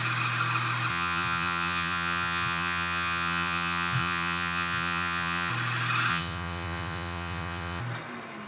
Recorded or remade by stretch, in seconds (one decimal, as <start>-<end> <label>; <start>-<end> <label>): 0.0-0.9 recorded; 0.9-5.5 remade; 5.5-6.1 recorded; 6.1-7.8 remade; 7.8-8.5 recorded